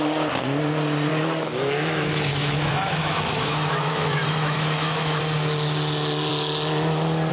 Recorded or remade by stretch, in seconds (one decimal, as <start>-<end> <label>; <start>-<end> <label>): 0.0-1.1 recorded; 1.1-5.2 remade; 5.2-7.3 recorded